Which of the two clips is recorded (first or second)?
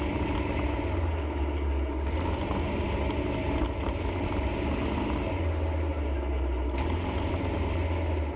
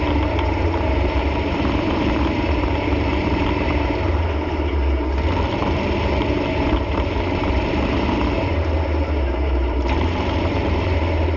first